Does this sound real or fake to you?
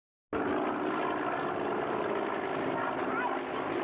real